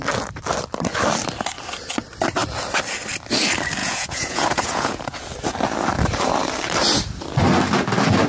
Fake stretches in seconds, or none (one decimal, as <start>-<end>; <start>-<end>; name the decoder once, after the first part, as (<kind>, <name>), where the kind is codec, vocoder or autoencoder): 3.8-5.2 (vocoder, Vocos)